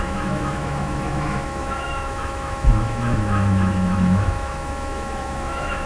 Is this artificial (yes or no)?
yes